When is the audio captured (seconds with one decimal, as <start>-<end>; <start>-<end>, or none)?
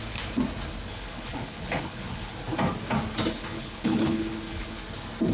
0.0-0.9; 2.3-3.4; 4.8-5.3